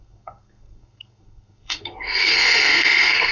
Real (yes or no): no